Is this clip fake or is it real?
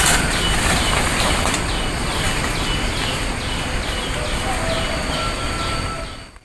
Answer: real